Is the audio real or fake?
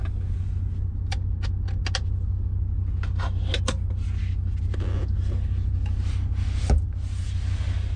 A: real